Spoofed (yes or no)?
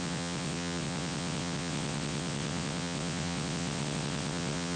yes